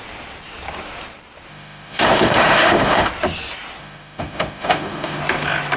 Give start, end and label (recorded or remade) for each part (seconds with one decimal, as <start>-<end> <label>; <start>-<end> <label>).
0.0-1.5 recorded; 1.5-3.1 remade; 3.1-3.8 recorded; 3.8-5.2 remade; 5.2-5.8 recorded